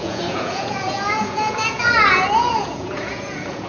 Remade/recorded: remade